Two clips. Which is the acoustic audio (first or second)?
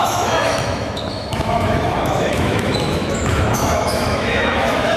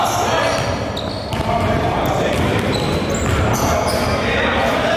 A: second